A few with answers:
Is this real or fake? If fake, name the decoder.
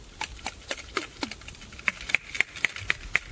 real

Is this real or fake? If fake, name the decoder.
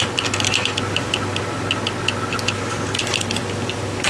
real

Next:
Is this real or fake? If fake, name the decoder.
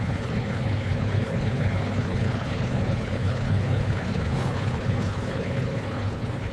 fake, codec, HILCodec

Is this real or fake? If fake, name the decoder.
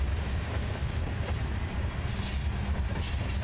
real